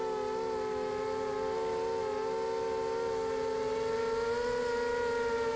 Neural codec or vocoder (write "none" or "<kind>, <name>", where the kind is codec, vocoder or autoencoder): none